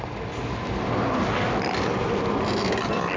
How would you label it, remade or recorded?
recorded